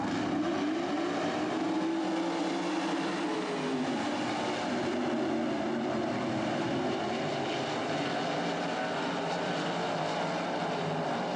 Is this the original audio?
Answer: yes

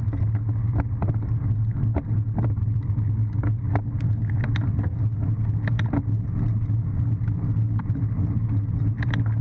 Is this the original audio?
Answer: yes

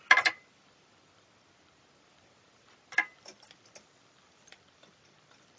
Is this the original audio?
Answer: yes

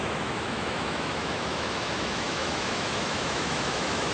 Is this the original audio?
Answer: no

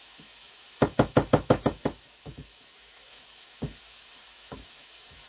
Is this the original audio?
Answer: no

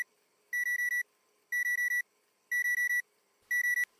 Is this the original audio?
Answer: yes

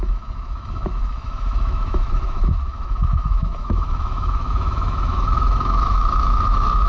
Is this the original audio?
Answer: no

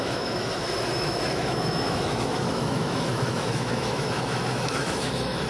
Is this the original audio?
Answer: no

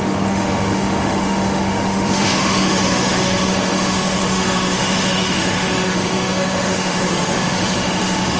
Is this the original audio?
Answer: no